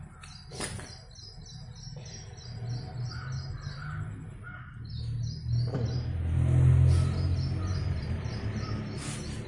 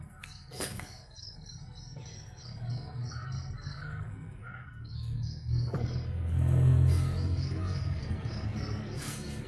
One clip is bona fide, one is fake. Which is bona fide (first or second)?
first